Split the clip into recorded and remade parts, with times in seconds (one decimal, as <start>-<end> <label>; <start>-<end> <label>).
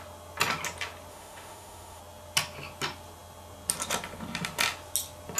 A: 0.0-1.1 recorded; 1.1-2.0 remade; 2.0-5.4 recorded